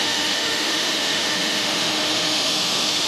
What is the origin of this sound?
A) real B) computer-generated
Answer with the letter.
B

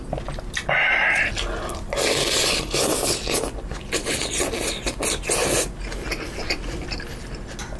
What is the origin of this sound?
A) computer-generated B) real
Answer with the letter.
B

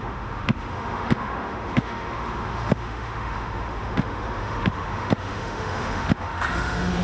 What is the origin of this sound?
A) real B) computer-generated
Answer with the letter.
B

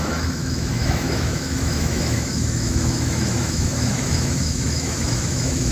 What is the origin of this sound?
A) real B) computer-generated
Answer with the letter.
B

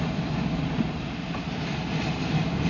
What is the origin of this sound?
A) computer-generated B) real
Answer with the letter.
B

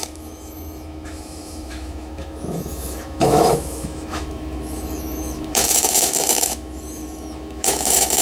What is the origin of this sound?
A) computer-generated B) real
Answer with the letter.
A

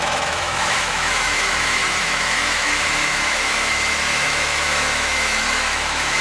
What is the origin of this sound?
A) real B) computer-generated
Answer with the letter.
B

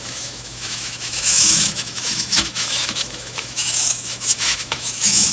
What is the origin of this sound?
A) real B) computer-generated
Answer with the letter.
B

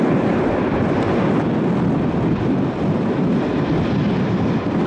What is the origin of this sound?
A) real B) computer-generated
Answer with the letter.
A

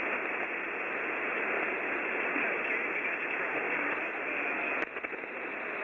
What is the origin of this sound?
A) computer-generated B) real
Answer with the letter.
B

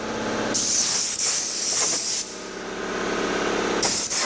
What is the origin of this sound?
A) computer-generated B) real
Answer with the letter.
B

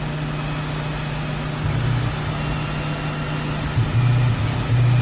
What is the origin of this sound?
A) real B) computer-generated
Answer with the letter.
A